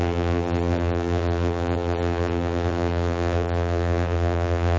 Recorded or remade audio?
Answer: remade